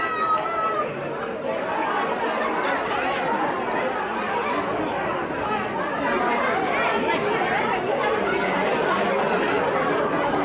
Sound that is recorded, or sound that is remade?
recorded